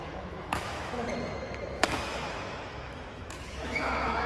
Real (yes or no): no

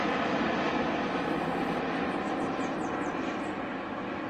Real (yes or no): yes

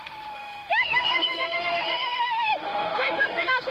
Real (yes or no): no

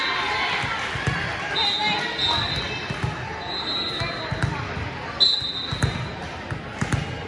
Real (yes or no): yes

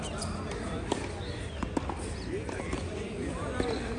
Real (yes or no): yes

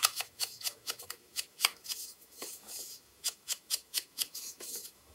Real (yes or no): no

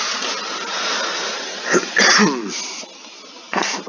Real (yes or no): yes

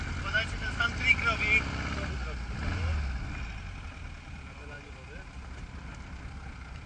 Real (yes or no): yes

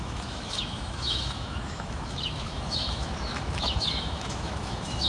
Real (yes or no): no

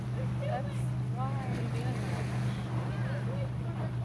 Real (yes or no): yes